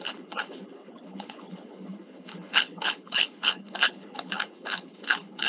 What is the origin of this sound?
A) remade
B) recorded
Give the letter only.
A